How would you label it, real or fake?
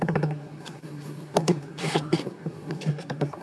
fake